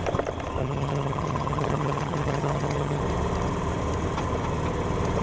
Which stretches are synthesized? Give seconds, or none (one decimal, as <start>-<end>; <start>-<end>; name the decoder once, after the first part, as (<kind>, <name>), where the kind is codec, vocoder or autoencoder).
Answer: 0.6-3.0 (vocoder, HiFi-GAN)